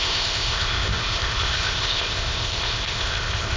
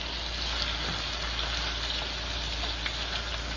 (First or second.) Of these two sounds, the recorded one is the second